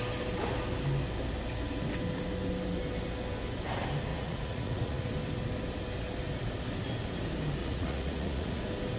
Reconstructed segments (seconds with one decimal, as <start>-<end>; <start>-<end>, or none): 4.1-5.1; 7.6-8.6